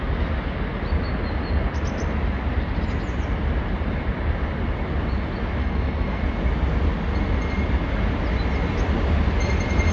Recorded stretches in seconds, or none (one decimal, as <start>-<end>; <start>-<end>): 0.0-5.6; 6.2-9.9